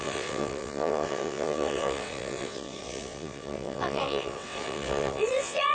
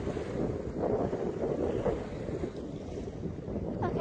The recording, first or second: second